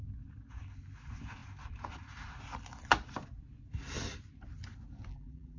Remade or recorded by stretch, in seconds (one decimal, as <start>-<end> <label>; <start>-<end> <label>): 0.0-5.1 recorded; 5.1-5.6 remade